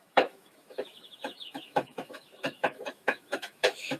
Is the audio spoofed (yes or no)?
yes